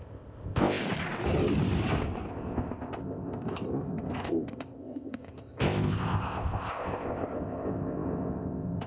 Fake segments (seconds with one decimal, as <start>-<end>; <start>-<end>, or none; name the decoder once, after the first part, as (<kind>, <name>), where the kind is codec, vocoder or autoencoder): 0.0-0.8 (codec, ZipCodec); 2.3-8.9